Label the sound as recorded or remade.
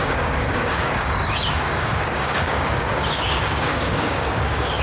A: remade